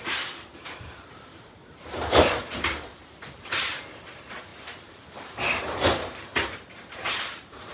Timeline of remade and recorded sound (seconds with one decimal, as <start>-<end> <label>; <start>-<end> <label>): 0.0-7.7 remade